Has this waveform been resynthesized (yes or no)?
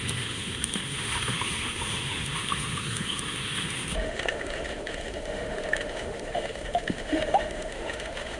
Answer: yes